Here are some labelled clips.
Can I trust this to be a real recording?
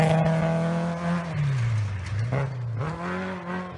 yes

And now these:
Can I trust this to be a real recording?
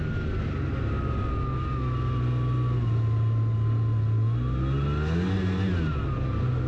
yes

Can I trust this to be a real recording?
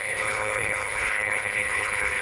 no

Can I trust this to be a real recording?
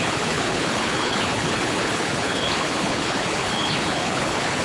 no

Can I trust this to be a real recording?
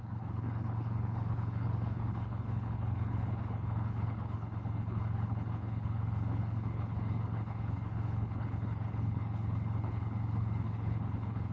no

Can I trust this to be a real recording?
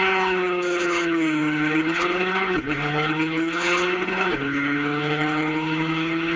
no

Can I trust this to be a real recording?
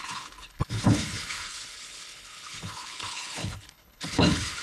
no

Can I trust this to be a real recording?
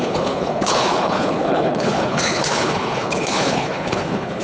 no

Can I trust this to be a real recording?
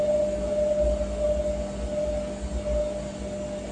yes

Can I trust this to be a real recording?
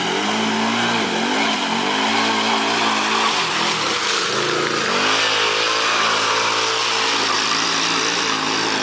yes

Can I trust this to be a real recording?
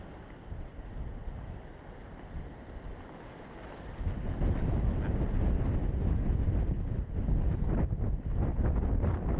yes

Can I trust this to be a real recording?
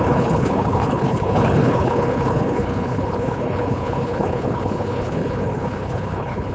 no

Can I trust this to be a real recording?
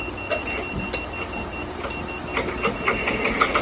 yes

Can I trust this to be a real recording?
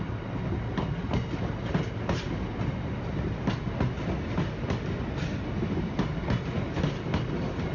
yes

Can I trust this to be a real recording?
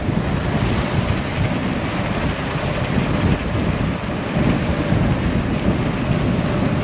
yes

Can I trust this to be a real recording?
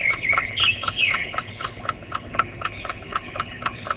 no